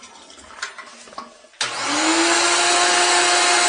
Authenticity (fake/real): real